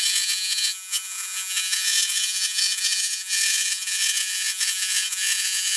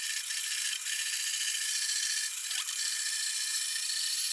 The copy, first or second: first